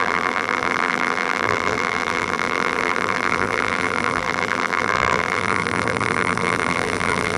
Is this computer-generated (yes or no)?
yes